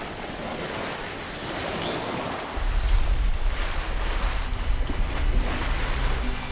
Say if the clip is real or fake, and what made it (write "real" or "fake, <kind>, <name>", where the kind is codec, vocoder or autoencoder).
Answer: real